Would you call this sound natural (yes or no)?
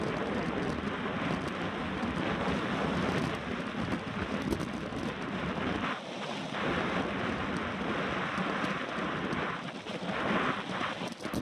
yes